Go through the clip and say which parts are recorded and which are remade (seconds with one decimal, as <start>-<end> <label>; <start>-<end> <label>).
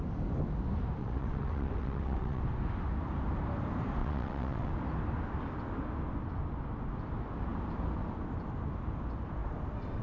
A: 0.0-1.0 recorded; 1.0-2.4 remade; 2.4-4.0 recorded; 4.0-4.7 remade; 4.7-10.0 recorded